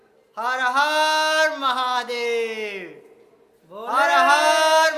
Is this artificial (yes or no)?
no